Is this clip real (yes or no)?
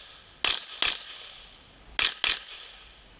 yes